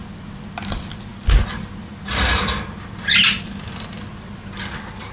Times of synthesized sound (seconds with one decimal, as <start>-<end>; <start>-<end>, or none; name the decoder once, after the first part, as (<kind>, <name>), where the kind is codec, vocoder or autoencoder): none